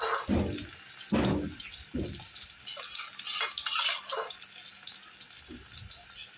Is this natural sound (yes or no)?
yes